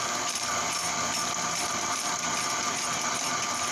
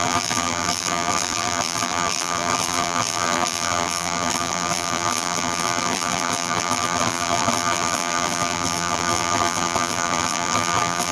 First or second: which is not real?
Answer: second